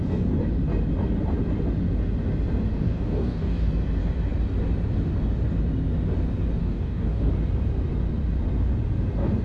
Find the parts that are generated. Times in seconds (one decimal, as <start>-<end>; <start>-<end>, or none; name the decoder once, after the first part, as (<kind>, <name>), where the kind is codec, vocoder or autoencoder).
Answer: 2.7-3.7 (codec, DAC); 6.6-7.3

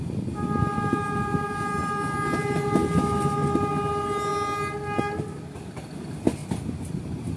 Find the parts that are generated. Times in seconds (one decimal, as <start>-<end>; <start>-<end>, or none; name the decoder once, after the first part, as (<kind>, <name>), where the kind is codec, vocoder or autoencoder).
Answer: none

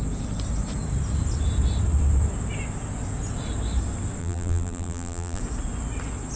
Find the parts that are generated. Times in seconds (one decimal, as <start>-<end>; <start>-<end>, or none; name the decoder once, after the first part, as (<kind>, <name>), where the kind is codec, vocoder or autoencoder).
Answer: 4.2-5.4 (vocoder, BigVGAN v2)

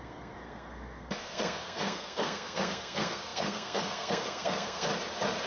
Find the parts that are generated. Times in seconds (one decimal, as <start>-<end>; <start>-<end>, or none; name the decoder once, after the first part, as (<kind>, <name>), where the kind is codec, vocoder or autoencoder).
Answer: 0.0-4.9 (codec, SNAC)

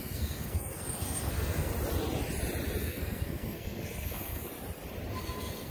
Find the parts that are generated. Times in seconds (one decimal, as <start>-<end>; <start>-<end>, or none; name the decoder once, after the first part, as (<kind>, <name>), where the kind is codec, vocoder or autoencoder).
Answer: 0.0-1.7 (codec, SNAC); 2.8-4.5; 5.2-5.7

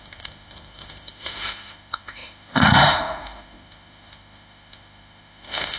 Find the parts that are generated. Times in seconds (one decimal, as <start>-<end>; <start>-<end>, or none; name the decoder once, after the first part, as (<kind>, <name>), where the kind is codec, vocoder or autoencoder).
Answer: 0.0-5.8 (autoencoder, DAC-VAE)